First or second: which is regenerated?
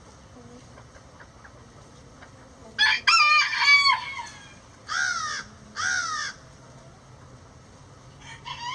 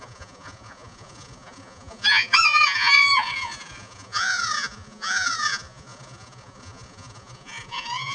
second